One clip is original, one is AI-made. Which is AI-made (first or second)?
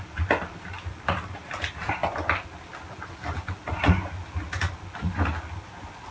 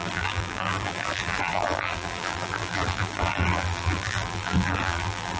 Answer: second